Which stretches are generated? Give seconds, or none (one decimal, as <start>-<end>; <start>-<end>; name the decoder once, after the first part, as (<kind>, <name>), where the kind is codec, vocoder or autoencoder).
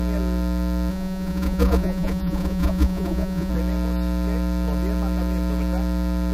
0.9-3.5 (vocoder, Vocos)